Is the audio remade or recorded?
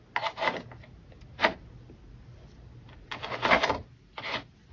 recorded